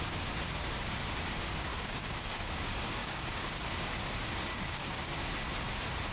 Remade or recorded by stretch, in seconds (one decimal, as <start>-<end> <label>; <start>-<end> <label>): 0.0-1.7 recorded; 1.7-2.6 remade; 2.6-3.0 recorded; 3.0-3.6 remade; 3.6-4.5 recorded; 4.5-5.1 remade; 5.1-6.1 recorded